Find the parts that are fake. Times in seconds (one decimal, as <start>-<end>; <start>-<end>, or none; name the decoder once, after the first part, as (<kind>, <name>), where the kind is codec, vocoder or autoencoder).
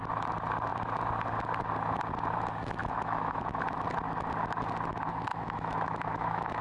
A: 2.8-3.6 (autoencoder, DAC-VAE); 5.3-6.6